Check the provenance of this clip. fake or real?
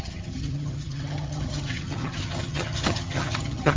fake